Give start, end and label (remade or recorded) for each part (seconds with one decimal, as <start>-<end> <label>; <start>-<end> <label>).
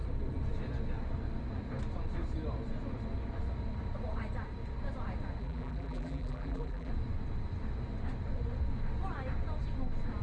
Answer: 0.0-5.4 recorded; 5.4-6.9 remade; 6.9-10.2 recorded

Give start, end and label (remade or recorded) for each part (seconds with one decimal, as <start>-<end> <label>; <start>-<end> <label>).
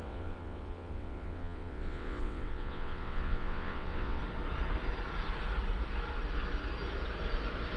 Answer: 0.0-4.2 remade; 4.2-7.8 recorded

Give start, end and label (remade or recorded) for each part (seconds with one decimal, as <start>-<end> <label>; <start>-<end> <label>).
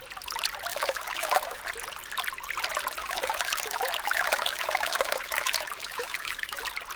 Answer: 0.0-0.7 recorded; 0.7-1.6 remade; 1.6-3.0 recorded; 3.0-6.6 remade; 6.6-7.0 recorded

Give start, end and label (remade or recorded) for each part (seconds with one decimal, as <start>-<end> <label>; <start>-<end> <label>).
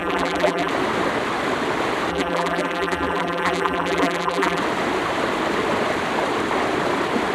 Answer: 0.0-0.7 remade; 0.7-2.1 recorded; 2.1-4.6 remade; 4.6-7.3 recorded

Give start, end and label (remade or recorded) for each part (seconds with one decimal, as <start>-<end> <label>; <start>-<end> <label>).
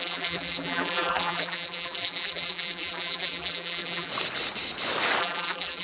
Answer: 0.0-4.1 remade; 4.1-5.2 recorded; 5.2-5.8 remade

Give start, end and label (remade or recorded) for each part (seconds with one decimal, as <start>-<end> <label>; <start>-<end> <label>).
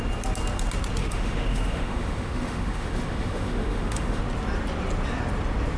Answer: 0.0-1.0 recorded; 1.0-4.2 remade; 4.2-5.8 recorded